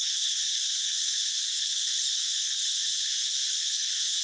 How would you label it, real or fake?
fake